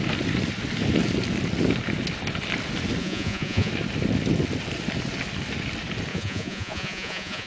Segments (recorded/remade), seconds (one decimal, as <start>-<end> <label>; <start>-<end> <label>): 0.0-3.0 recorded; 3.0-3.7 remade; 3.7-6.1 recorded; 6.1-7.5 remade